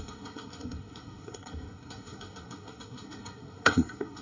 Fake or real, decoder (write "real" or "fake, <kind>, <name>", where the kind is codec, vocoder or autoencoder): fake, codec, SNAC